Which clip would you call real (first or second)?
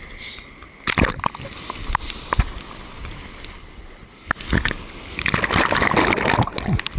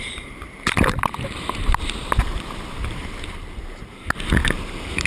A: first